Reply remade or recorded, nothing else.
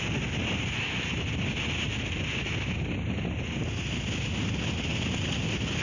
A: recorded